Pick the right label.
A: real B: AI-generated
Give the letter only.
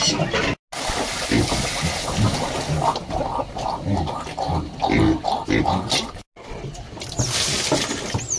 A